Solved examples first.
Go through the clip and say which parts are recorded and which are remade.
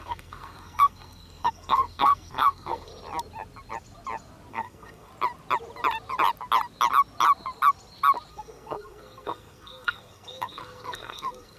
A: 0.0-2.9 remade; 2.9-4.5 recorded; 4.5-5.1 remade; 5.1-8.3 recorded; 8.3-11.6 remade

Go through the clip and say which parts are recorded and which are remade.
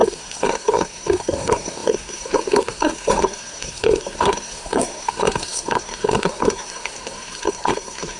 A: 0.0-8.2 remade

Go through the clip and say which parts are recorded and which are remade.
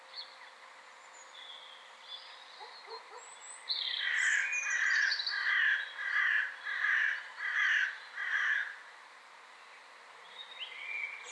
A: 0.0-11.3 recorded